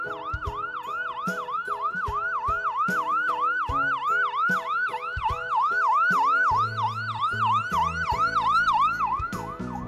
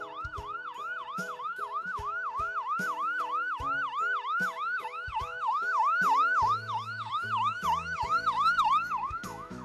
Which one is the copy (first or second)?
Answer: second